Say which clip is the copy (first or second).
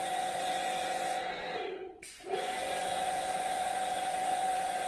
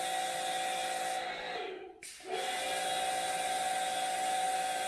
first